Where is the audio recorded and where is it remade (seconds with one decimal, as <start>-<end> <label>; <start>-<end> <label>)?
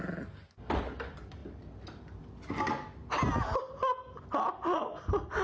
0.0-5.4 recorded